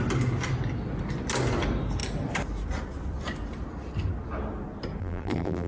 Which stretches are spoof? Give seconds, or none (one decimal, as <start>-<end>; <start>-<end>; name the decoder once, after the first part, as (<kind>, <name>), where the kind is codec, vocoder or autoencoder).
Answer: 5.0-5.7 (vocoder, BigVGAN v2)